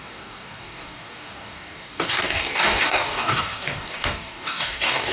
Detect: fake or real fake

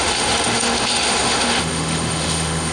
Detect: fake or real fake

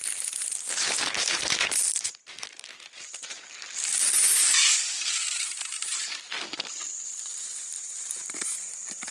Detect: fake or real fake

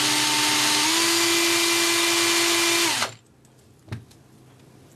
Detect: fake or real real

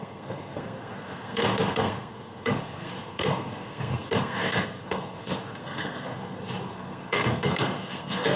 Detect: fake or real fake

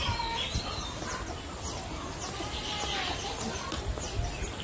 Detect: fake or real real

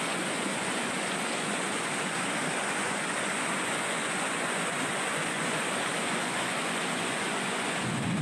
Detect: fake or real fake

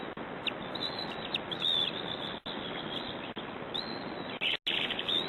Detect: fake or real real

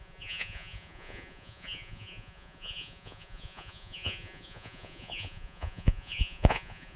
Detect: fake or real fake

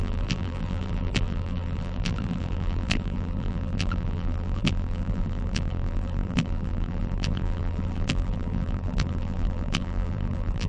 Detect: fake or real fake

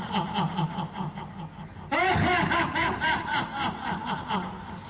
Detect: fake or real real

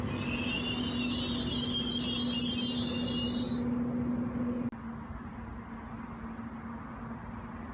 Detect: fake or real real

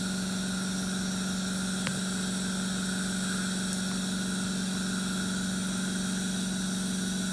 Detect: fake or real real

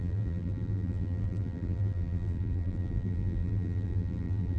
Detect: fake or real fake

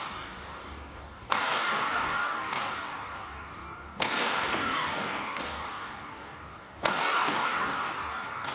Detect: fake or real fake